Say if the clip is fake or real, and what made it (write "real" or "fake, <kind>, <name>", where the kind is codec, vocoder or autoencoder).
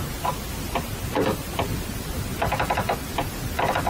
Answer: fake, vocoder, BigVGAN v2